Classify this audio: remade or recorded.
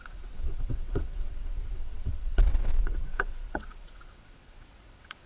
remade